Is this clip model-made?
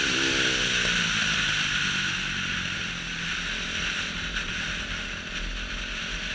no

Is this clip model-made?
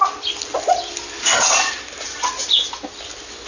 no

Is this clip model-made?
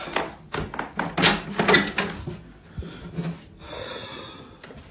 no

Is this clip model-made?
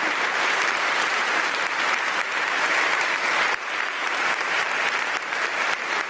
yes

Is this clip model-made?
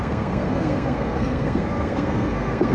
yes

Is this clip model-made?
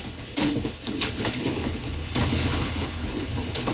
yes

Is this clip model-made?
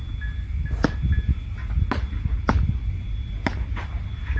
no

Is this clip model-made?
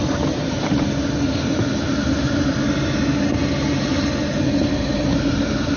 no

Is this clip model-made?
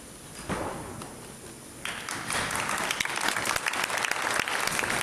no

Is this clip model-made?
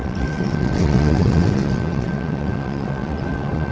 yes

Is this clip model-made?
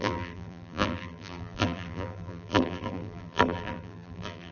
yes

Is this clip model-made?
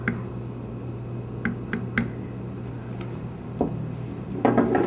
no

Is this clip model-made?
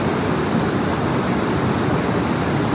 no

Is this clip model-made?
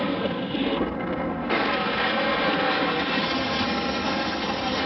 yes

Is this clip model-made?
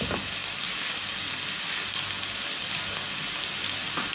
no